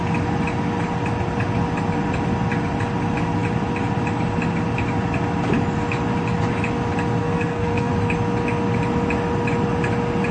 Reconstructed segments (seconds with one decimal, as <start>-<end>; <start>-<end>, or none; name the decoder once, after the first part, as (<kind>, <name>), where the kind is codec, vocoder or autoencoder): 7.2-7.9 (codec, SNAC)